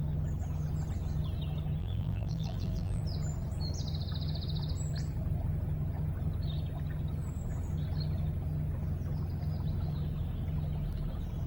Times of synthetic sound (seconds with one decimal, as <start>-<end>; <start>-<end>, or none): 1.8-3.0